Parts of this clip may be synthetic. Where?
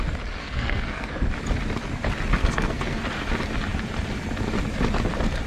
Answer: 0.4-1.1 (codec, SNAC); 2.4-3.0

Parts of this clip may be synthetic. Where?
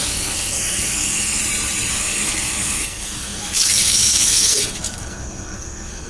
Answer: 0.0-1.4 (codec, SNAC); 1.9-6.1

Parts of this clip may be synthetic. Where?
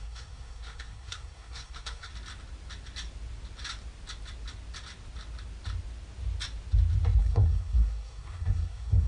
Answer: 0.0-2.1 (codec, SNAC); 7.2-9.1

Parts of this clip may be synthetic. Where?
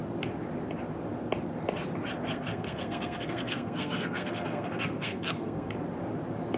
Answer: 2.3-5.7 (codec, SNAC)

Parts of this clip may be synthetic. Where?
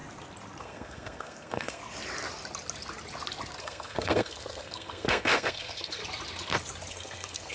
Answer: 0.6-1.8 (codec, SNAC); 3.6-6.0; 6.9-7.5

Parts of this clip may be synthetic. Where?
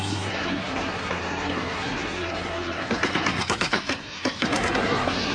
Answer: 0.0-5.3 (codec, SNAC)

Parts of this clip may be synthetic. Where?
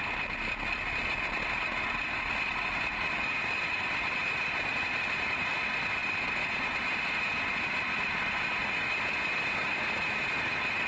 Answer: none